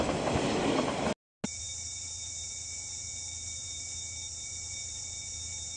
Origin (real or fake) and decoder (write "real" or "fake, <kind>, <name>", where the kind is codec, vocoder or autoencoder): real